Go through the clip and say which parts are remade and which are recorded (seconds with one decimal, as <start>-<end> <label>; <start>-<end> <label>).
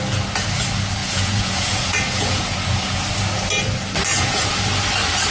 0.0-1.0 recorded; 1.0-3.0 remade; 3.0-4.1 recorded; 4.1-4.6 remade; 4.6-5.3 recorded